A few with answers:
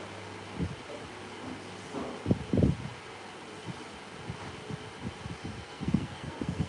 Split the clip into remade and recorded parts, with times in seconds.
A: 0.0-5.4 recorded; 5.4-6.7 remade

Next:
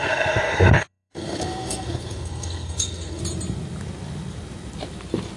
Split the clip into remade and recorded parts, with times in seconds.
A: 0.0-3.2 remade; 3.2-5.4 recorded

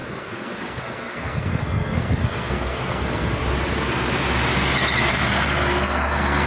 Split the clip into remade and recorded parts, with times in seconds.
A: 0.0-3.4 remade; 3.4-5.1 recorded; 5.1-6.5 remade

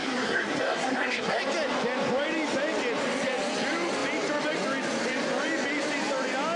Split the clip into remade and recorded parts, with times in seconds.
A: 0.0-1.4 remade; 1.4-6.6 recorded

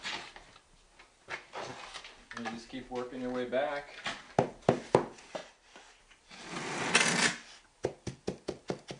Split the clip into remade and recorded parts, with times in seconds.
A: 0.0-9.0 recorded

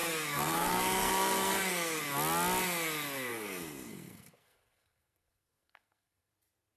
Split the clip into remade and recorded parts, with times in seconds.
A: 0.0-2.0 remade; 2.0-3.3 recorded; 3.3-6.3 remade; 6.3-6.8 recorded

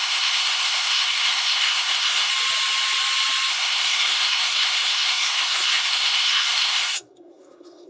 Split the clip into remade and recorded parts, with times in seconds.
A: 0.0-2.3 remade; 2.3-3.5 recorded; 3.5-7.9 remade

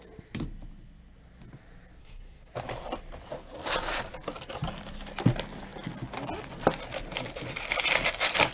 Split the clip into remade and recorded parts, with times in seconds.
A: 0.0-2.0 recorded; 2.0-2.5 remade; 2.5-8.5 recorded